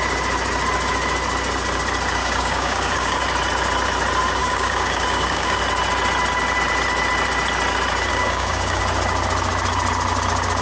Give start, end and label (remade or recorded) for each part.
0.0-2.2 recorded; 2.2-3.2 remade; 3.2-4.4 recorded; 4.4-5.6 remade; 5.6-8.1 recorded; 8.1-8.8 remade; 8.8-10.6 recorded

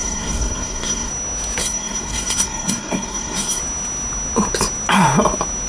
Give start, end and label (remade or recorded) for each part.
0.0-1.1 remade; 1.1-1.6 recorded; 1.6-3.6 remade; 3.6-5.7 recorded

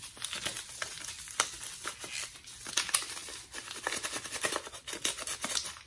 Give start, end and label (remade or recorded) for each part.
0.0-5.9 recorded

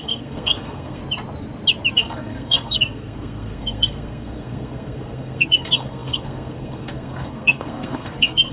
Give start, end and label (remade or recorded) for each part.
0.0-1.0 remade; 1.0-1.9 recorded; 1.9-8.5 remade

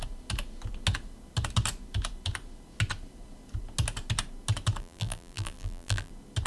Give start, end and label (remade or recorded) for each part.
0.0-4.8 recorded; 4.8-6.1 remade; 6.1-6.5 recorded